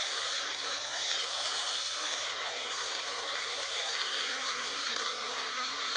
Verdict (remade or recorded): remade